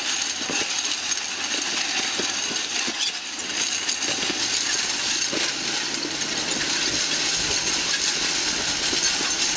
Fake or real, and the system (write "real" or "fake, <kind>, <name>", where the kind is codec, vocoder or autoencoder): real